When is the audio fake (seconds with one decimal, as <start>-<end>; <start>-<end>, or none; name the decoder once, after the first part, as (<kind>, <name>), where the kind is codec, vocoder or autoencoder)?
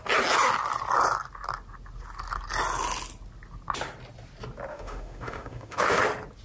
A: 4.7-6.0 (autoencoder, DAC-VAE)